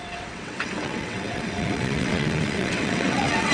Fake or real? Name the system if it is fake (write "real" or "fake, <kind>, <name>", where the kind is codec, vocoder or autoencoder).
fake, vocoder, WaveNeXt